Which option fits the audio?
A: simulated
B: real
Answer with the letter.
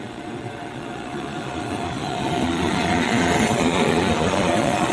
A